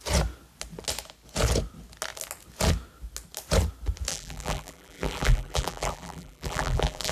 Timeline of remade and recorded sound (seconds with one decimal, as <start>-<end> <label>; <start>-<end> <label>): 0.0-4.1 recorded; 4.1-7.1 remade

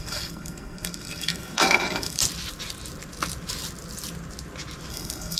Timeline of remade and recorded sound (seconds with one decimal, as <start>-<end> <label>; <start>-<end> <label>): 0.0-2.2 remade; 2.2-4.9 recorded; 4.9-5.4 remade